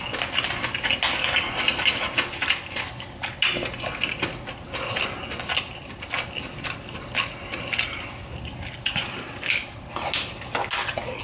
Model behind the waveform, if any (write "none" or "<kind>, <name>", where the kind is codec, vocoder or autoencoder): none